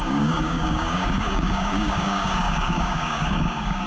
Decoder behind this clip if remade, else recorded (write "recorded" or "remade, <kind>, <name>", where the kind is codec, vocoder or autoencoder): remade, codec, DAC